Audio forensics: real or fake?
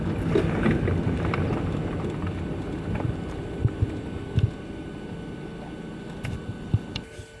real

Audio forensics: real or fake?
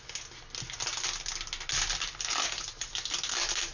real